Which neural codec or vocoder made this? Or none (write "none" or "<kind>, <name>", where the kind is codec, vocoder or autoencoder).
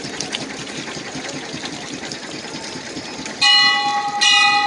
none